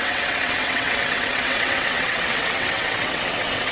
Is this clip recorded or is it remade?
remade